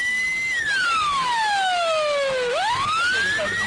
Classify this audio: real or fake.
real